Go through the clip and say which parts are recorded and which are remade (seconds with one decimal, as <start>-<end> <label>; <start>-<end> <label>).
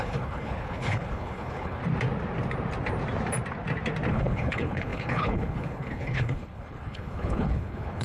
0.0-1.8 remade; 1.8-4.1 recorded; 4.1-8.0 remade